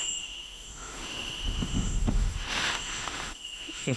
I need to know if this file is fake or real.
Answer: fake